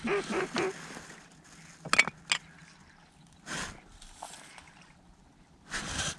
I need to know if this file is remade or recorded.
recorded